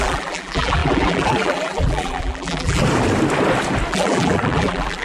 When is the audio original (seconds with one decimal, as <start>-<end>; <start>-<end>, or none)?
2.8-3.9